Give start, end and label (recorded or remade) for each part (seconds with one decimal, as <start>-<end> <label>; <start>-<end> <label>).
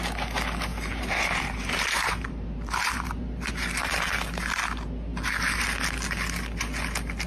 0.0-0.7 recorded; 0.7-3.5 remade; 3.5-7.3 recorded